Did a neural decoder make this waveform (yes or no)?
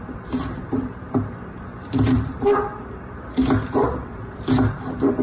yes